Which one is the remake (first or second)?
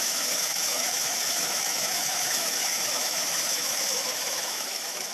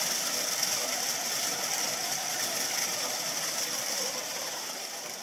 first